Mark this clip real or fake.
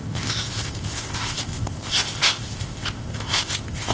fake